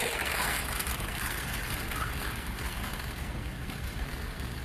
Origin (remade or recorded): remade